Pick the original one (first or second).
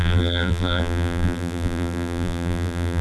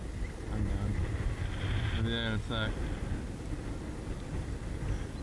second